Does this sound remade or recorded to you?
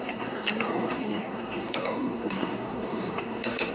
remade